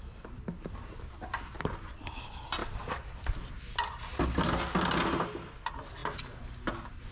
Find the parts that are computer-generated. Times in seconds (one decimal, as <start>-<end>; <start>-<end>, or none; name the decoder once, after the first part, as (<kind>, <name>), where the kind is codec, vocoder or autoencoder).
none